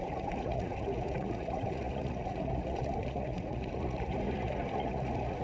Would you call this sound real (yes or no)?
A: no